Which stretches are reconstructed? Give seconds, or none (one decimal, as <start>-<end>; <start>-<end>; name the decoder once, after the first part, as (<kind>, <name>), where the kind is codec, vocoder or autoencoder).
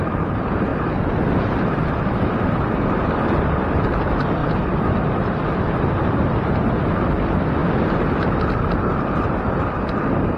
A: 0.0-0.7 (vocoder, BigVGAN v2); 2.0-4.4; 5.6-7.6; 9.0-10.4